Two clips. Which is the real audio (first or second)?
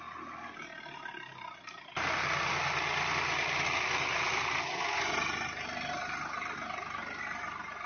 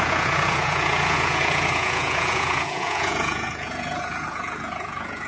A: first